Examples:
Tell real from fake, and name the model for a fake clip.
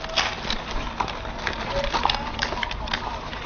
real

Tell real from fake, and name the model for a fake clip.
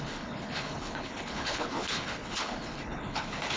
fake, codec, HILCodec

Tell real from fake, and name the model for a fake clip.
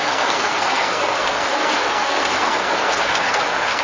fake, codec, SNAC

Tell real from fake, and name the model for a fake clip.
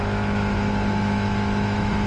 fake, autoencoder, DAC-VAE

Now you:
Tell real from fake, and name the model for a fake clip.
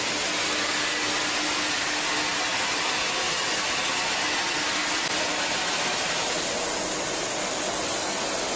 real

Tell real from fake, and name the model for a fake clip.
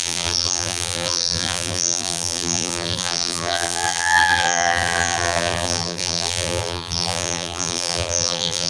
fake, vocoder, BigVGAN v2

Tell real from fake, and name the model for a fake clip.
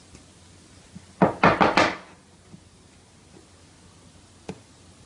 real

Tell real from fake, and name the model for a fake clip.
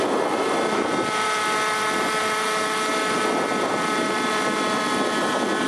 real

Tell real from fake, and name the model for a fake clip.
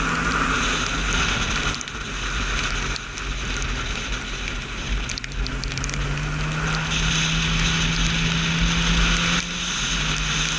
real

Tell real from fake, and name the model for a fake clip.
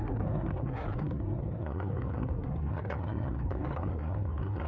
fake, codec, SNAC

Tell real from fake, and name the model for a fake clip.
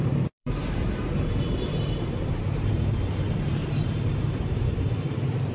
fake, vocoder, BigVGAN v2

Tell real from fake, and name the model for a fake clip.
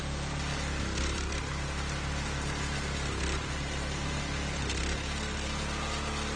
real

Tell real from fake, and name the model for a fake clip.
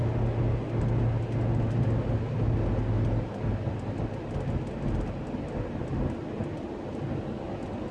real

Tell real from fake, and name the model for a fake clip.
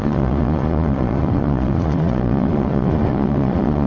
fake, vocoder, Vocos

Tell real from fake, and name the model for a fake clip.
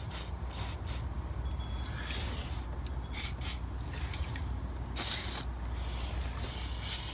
real